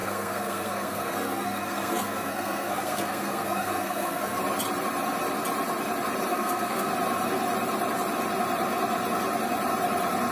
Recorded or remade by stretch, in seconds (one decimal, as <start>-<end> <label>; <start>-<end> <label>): 0.0-4.4 remade; 4.4-6.3 recorded; 6.3-6.9 remade; 6.9-10.3 recorded